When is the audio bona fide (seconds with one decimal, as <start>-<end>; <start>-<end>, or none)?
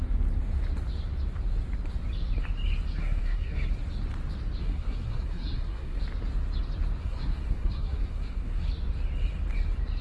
0.0-2.9; 3.7-4.6; 6.0-7.0; 8.7-10.0